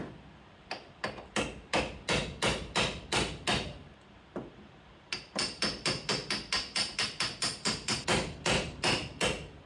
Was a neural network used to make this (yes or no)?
no